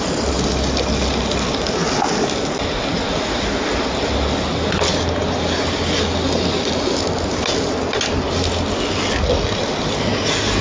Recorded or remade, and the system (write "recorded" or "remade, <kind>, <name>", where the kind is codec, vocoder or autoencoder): recorded